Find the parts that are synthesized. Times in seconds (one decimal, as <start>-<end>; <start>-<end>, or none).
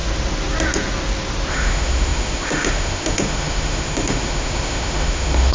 1.5-5.5